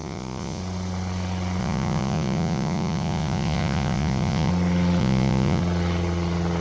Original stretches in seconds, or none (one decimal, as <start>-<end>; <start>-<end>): 0.6-1.6; 4.5-5.0; 5.6-6.6